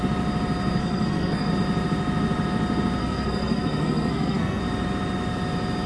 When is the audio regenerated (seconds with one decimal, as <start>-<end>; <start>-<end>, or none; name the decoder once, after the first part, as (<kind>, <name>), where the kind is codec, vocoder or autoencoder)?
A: 0.8-1.5 (codec, SNAC); 3.0-4.6